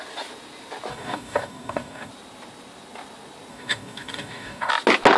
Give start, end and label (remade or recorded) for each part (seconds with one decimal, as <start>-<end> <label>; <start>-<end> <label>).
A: 0.0-0.9 recorded; 0.9-2.1 remade; 2.1-3.5 recorded; 3.5-4.7 remade; 4.7-5.2 recorded